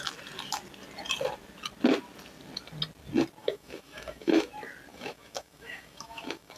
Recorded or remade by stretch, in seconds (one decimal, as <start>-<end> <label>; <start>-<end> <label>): 0.0-3.4 recorded; 3.4-4.5 remade; 4.5-4.9 recorded; 4.9-6.6 remade